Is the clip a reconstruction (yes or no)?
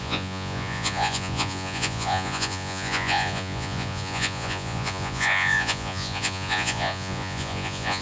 yes